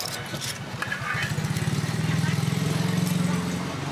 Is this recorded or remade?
recorded